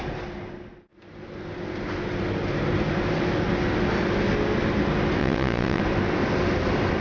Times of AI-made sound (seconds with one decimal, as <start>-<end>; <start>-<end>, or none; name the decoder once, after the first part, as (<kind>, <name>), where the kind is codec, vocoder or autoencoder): 5.2-5.8 (vocoder, Vocos)